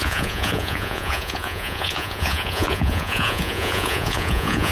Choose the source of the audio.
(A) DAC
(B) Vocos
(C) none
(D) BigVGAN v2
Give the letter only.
B